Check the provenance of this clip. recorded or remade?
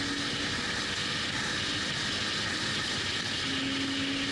recorded